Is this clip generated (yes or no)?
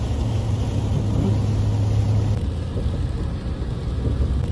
no